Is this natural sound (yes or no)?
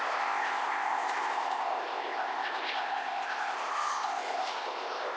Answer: no